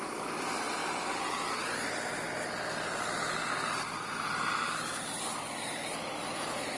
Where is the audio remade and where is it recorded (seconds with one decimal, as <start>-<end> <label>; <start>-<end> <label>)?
0.0-6.2 recorded; 6.2-6.8 remade